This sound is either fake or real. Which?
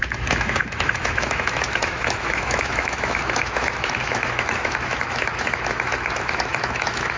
fake